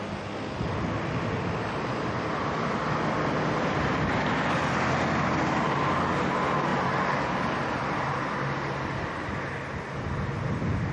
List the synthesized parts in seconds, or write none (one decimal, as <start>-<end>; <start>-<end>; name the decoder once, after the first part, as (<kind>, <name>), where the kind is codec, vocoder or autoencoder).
6.7-8.2 (vocoder, BigVGAN v2)